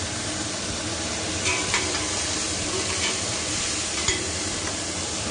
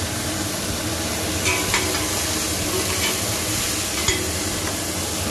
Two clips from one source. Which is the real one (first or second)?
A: second